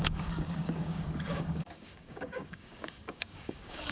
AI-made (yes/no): yes